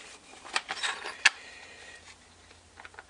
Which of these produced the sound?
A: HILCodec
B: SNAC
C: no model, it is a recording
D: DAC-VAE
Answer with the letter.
C